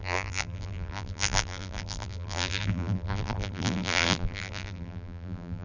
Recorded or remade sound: remade